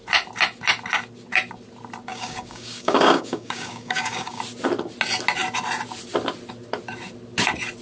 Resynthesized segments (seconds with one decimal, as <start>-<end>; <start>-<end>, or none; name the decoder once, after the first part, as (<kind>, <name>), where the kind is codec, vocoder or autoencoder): 2.1-4.4 (codec, DAC)